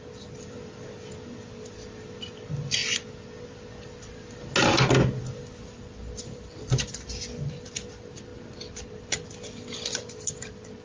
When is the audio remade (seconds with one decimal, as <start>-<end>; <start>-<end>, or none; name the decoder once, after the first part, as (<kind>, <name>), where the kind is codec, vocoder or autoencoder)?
none

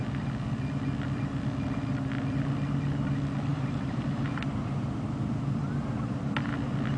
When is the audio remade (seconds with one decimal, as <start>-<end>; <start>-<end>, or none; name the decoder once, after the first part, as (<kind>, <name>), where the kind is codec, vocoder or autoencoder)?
3.5-4.9 (vocoder, BigVGAN v2); 5.6-6.4

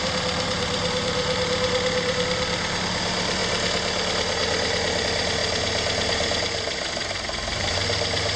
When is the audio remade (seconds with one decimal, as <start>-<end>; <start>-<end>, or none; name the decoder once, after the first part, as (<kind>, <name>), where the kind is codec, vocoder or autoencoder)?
0.0-3.4 (vocoder, BigVGAN v2); 5.0-5.4; 7.1-8.4

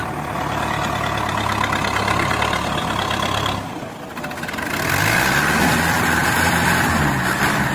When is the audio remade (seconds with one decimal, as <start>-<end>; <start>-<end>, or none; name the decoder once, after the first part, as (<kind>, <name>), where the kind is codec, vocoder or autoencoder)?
2.8-3.9 (vocoder, BigVGAN v2); 6.2-7.0

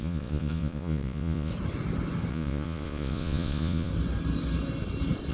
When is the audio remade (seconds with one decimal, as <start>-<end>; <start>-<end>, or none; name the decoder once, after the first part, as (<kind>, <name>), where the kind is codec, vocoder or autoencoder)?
0.0-1.5 (vocoder, Vocos); 2.3-3.9